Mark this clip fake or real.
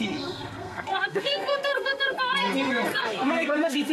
fake